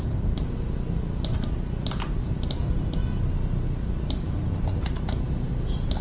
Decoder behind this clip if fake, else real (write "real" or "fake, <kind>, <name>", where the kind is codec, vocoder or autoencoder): real